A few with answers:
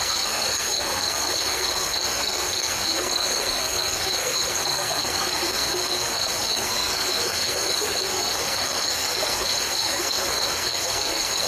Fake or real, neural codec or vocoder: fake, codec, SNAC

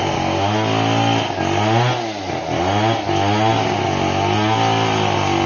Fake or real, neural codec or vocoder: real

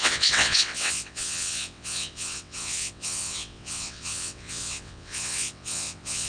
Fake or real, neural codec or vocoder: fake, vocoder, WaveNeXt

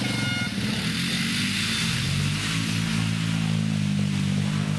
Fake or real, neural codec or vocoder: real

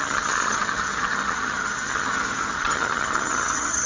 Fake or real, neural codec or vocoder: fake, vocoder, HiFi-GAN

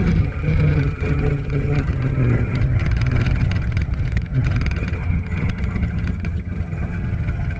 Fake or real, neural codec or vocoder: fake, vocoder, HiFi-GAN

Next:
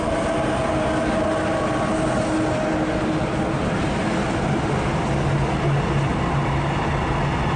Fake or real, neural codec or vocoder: real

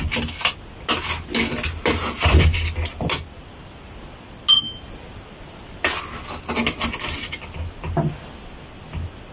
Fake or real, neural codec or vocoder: real